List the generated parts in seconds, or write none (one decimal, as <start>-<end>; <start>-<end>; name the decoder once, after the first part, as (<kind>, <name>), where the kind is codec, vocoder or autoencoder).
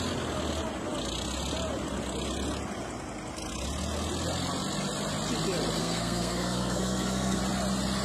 5.8-7.4 (codec, SNAC)